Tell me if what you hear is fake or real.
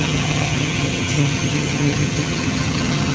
fake